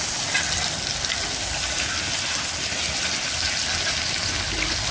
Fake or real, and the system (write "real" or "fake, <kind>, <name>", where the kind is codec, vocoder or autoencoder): real